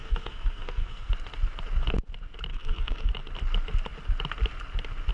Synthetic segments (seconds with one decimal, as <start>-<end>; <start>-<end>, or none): 0.0-1.1; 2.5-3.1